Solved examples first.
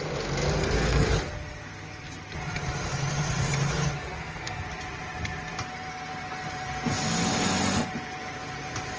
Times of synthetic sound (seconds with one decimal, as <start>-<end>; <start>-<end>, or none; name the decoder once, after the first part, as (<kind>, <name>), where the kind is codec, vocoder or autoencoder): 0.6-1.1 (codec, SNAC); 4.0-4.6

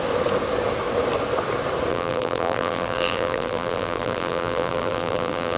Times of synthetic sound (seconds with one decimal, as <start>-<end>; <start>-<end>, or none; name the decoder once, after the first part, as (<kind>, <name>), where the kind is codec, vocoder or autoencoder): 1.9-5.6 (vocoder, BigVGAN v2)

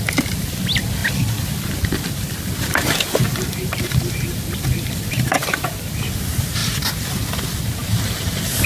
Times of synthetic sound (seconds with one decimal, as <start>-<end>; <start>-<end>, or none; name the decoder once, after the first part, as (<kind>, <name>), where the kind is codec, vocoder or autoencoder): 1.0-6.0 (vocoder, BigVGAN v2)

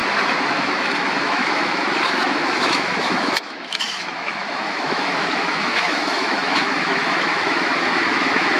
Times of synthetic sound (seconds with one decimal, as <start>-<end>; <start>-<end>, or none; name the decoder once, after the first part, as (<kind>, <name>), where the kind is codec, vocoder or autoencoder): 0.5-8.6 (autoencoder, DAC-VAE)

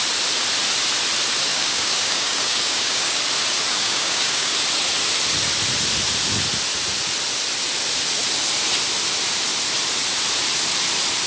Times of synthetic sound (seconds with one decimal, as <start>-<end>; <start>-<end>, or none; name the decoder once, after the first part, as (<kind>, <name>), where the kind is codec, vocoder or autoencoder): 1.5-3.2 (codec, DAC); 3.7-4.5

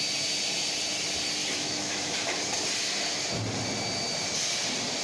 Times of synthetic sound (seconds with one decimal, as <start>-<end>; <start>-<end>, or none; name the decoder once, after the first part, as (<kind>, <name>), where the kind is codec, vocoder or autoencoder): 1.4-2.4 (autoencoder, DAC-VAE)